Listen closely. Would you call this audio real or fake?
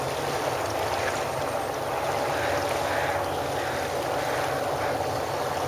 real